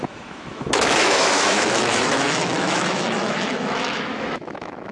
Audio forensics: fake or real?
fake